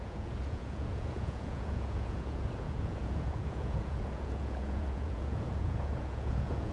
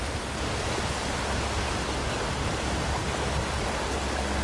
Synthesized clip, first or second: first